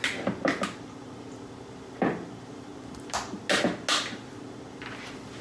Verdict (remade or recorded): recorded